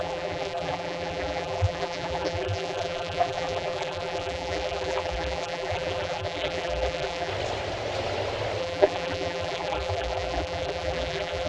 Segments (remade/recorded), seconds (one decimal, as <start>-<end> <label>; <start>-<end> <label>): 0.0-7.3 remade; 7.3-8.6 recorded; 8.6-11.5 remade

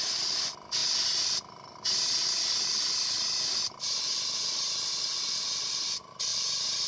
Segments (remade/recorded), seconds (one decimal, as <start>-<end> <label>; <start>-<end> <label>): 0.0-6.3 recorded; 6.3-6.9 remade

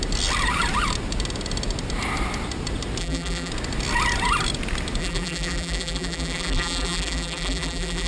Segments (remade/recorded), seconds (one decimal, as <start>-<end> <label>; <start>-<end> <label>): 0.0-3.0 recorded; 3.0-3.5 remade; 3.5-5.0 recorded; 5.0-8.1 remade

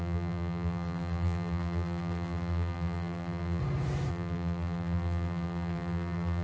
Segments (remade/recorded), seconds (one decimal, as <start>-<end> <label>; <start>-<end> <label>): 0.0-3.6 remade; 3.6-4.1 recorded; 4.1-6.4 remade